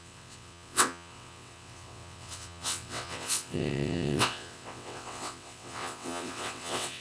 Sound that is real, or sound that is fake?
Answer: fake